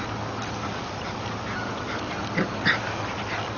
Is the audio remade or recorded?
recorded